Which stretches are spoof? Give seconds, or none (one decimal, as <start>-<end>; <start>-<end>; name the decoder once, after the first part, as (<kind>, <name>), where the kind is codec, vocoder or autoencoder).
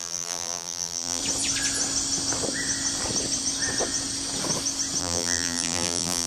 0.0-1.2 (vocoder, BigVGAN v2); 5.0-6.3